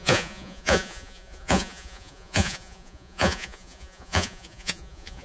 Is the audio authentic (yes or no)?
no